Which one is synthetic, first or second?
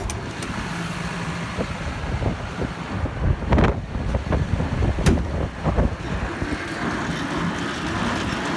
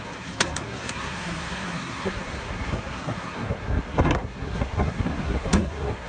second